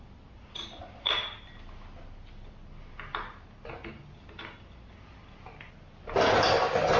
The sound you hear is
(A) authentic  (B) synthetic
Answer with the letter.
A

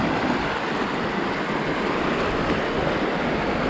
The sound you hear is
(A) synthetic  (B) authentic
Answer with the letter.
B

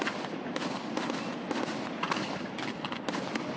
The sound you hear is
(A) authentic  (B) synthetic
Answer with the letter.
A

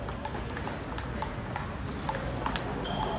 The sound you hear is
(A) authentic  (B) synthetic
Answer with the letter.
A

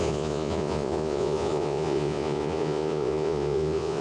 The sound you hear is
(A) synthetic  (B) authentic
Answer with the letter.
A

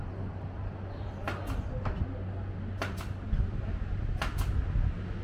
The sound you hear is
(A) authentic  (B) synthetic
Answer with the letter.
A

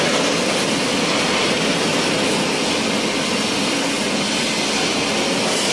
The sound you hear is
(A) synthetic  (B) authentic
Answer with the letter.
B